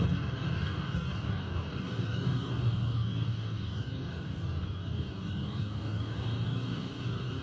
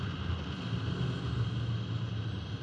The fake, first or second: first